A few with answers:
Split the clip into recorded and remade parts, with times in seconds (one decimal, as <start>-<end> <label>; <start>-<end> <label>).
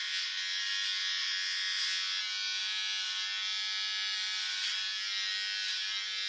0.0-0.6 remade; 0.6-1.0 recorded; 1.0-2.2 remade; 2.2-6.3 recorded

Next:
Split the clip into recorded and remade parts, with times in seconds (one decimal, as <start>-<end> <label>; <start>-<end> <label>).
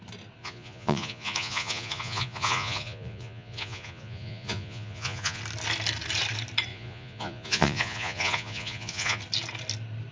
0.0-0.4 recorded; 0.4-5.4 remade; 5.4-6.7 recorded; 6.7-9.2 remade; 9.2-10.1 recorded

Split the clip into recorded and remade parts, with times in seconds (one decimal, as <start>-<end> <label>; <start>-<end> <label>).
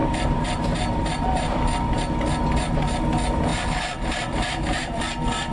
0.0-2.0 remade; 2.0-3.5 recorded; 3.5-5.0 remade; 5.0-5.5 recorded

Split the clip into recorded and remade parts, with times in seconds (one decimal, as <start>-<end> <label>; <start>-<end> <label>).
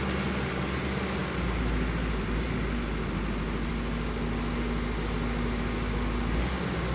0.0-6.9 recorded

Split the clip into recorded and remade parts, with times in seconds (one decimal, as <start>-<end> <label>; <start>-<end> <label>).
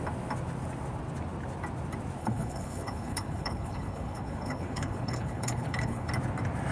0.0-2.2 recorded; 2.2-6.1 remade; 6.1-6.7 recorded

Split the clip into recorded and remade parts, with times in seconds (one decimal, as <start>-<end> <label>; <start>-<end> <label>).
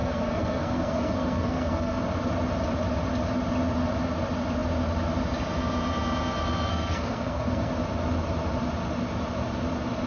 0.0-2.0 remade; 2.0-6.7 recorded; 6.7-7.7 remade; 7.7-10.1 recorded